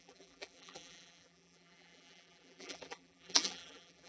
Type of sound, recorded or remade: remade